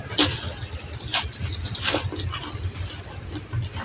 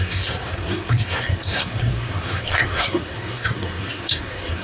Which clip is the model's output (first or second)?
second